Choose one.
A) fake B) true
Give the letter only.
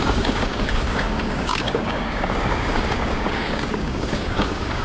A